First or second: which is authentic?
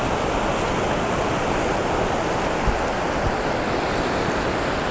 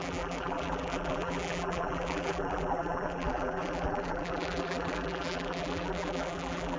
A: first